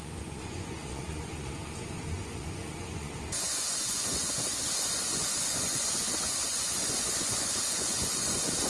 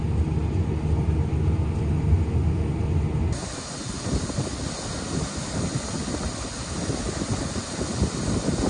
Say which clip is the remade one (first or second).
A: first